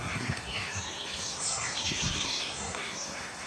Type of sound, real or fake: fake